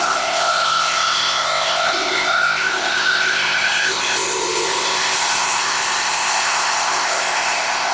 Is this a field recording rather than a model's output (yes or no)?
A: no